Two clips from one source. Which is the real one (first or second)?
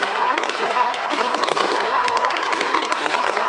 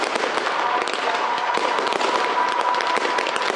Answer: second